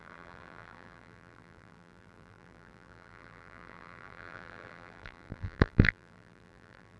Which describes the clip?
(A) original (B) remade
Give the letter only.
B